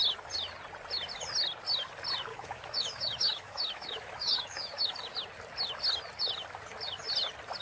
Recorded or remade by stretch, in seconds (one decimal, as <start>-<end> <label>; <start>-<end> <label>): 0.0-2.3 recorded; 2.3-4.9 remade; 4.9-7.6 recorded